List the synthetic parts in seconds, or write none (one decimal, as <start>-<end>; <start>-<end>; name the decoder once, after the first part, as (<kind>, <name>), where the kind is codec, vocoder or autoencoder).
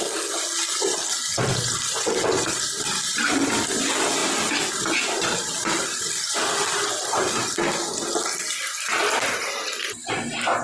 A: none